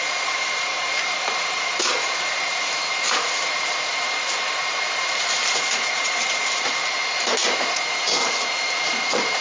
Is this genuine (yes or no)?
no